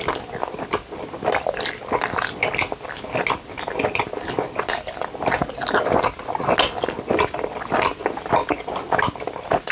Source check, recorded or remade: recorded